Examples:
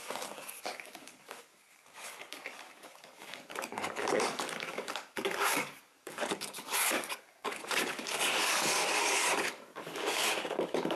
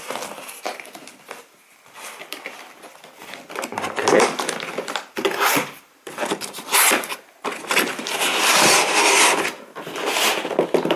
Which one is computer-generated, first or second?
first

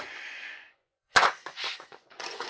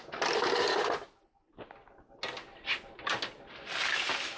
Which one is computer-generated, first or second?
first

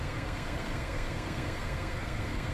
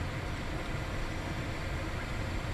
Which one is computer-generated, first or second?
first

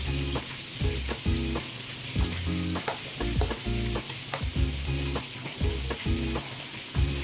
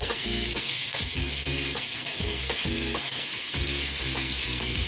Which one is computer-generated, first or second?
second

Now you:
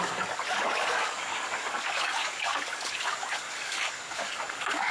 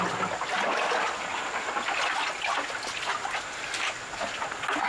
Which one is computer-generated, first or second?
first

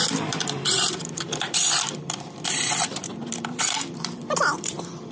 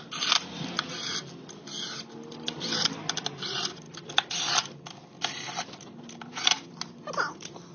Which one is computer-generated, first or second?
first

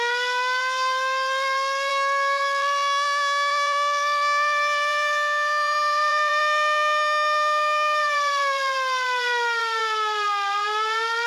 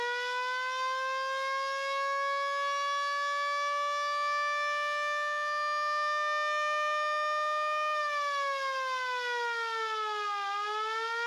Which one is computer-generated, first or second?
first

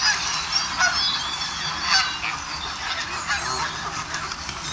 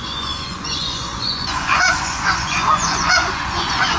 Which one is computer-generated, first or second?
second